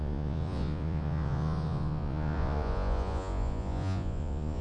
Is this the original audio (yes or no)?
no